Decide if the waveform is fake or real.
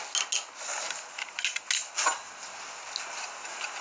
real